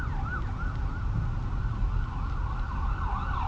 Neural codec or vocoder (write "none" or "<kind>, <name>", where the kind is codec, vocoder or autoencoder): none